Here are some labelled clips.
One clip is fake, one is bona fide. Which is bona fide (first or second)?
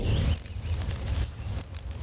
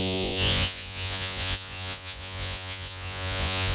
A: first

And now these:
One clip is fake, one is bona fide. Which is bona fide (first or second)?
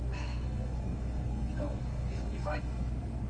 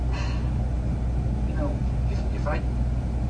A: second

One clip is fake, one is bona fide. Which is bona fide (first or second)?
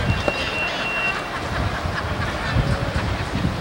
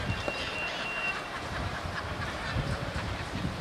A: first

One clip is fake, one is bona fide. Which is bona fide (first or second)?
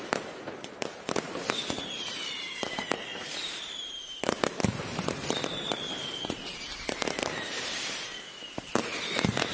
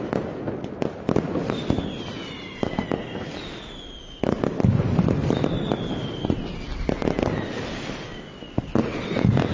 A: second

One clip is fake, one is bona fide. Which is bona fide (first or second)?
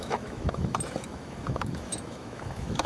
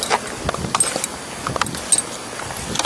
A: second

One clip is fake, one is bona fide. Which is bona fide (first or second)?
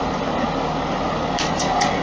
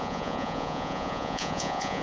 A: first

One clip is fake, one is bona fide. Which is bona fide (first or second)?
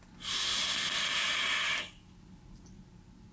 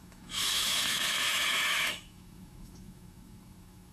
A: first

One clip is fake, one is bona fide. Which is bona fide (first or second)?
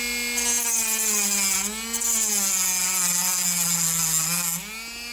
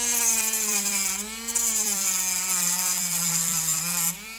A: first